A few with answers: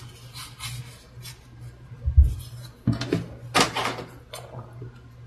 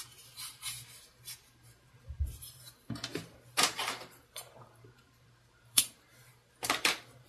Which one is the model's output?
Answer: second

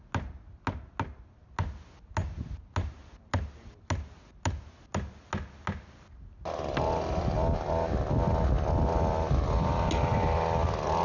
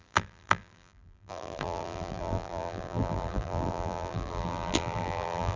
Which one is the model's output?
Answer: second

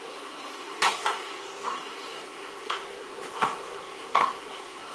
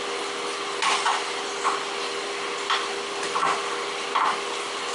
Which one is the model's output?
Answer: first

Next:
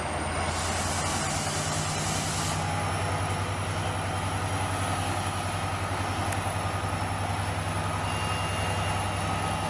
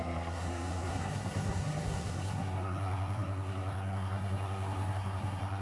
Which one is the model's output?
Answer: second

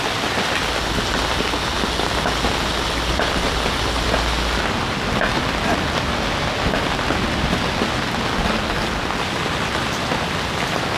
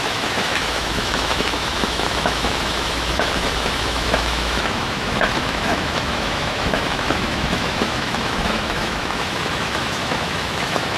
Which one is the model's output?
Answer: second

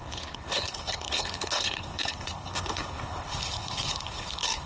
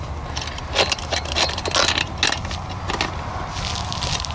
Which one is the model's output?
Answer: first